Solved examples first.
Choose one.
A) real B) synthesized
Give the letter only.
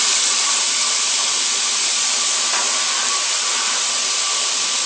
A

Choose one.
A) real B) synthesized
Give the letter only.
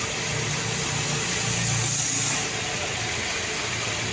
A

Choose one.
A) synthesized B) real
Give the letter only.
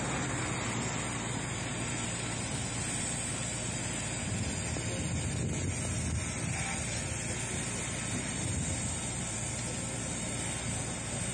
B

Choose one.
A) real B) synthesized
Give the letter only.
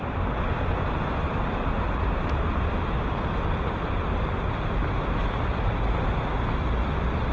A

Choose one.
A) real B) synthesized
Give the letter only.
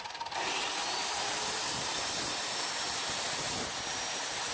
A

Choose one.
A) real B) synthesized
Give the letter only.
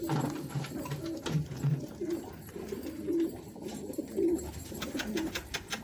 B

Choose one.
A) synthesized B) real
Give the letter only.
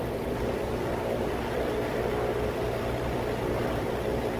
A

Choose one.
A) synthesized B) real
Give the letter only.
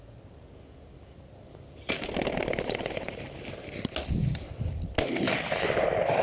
B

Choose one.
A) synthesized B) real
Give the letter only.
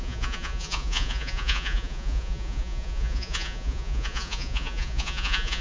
A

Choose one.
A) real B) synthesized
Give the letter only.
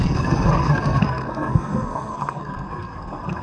B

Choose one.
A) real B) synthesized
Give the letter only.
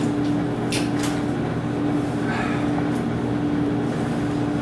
A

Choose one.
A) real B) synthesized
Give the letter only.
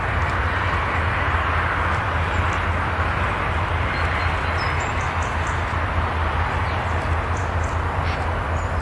A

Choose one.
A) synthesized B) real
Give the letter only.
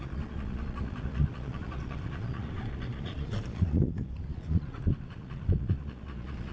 A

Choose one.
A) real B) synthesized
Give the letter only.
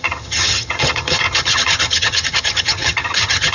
B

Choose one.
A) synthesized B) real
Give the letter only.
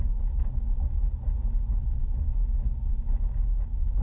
B